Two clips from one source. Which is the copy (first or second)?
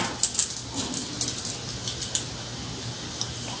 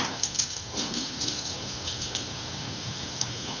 second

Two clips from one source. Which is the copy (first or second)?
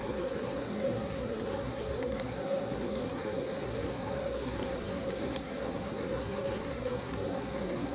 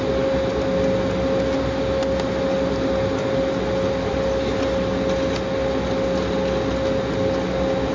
first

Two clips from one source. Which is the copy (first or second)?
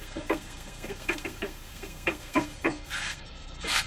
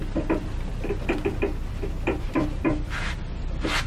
first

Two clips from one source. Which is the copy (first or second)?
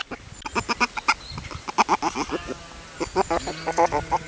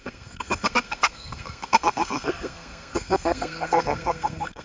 second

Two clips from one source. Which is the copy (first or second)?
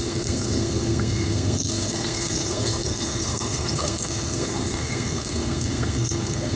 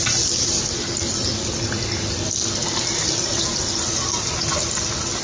first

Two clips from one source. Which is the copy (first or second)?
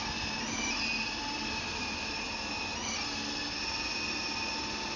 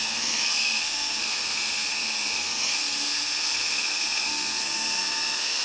second